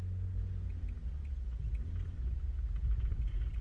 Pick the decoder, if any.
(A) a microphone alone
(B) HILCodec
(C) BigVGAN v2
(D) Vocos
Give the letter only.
A